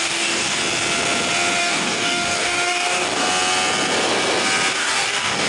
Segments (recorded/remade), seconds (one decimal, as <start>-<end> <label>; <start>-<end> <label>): 0.0-0.6 remade; 0.6-1.6 recorded; 1.6-3.2 remade; 3.2-4.7 recorded; 4.7-5.5 remade